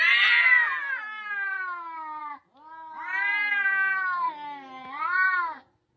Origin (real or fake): real